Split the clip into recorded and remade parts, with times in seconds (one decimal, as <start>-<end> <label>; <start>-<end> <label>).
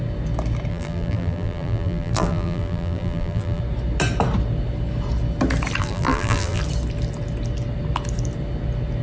0.0-0.7 recorded; 0.7-3.6 remade; 3.6-5.8 recorded; 5.8-6.6 remade; 6.6-9.0 recorded